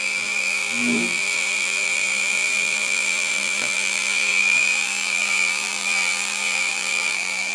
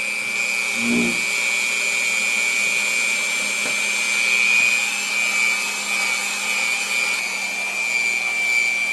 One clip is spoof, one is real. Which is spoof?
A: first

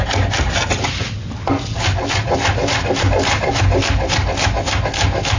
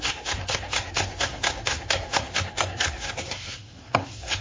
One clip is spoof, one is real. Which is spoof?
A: second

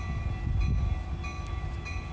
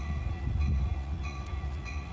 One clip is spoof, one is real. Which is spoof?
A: second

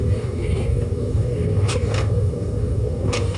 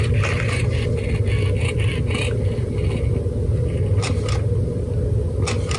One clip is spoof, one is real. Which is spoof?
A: first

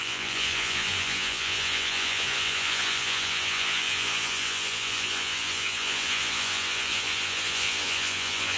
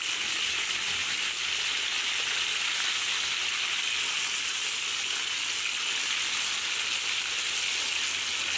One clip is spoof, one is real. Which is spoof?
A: first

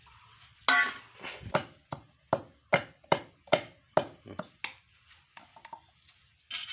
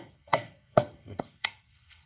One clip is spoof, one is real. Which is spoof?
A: second